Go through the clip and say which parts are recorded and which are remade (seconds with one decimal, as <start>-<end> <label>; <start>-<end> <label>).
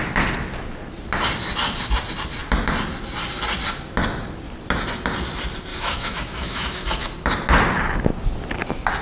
0.0-5.7 recorded; 5.7-7.1 remade; 7.1-9.0 recorded